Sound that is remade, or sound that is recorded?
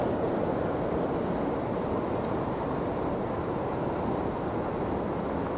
recorded